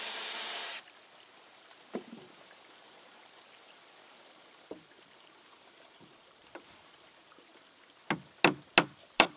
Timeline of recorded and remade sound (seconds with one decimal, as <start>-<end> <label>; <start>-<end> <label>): 0.0-0.6 remade; 0.6-1.8 recorded; 1.8-7.5 remade; 7.5-9.0 recorded; 9.0-9.4 remade